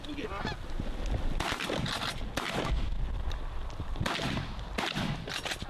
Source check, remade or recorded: recorded